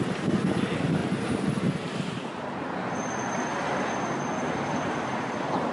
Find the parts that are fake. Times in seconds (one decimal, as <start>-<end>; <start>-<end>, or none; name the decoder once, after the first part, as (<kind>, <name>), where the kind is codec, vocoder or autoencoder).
0.0-1.0 (vocoder, BigVGAN v2); 4.4-5.7